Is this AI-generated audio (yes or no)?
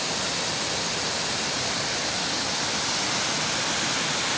no